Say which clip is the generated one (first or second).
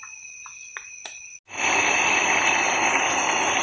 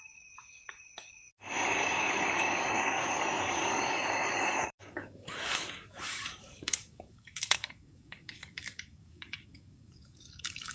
second